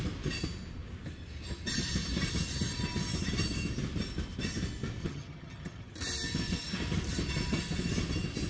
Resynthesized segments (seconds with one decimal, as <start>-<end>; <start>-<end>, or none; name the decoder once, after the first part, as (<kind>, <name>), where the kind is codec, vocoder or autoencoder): 5.0-5.9 (vocoder, HiFi-GAN)